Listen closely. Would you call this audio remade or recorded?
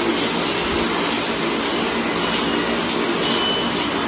recorded